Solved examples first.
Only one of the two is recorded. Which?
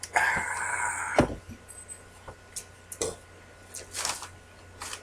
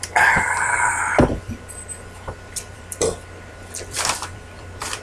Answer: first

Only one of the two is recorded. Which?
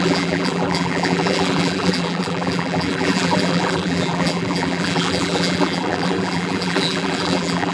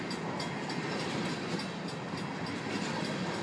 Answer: second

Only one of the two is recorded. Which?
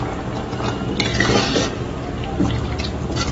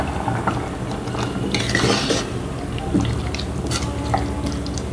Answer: first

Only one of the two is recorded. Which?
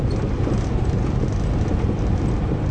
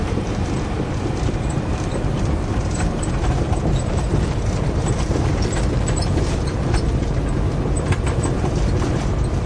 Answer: first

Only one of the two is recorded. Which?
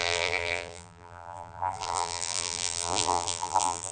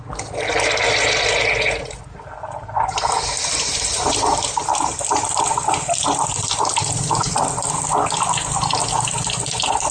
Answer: second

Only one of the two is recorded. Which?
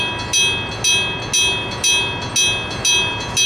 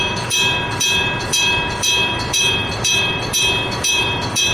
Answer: first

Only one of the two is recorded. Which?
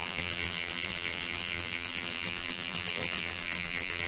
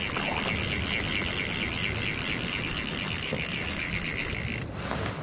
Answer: second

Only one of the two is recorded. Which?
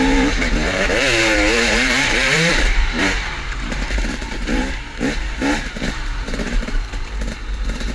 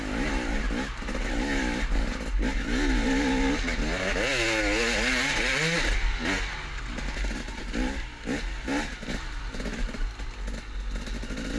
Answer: second